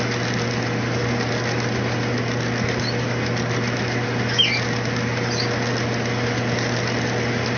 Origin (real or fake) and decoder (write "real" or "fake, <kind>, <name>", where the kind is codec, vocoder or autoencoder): real